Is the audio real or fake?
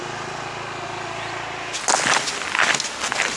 real